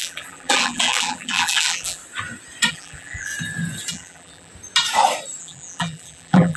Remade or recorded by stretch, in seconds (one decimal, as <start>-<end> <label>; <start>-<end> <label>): 0.0-2.0 remade; 2.0-2.7 recorded; 2.7-3.3 remade; 3.3-3.9 recorded; 3.9-4.5 remade; 4.5-5.4 recorded; 5.4-6.6 remade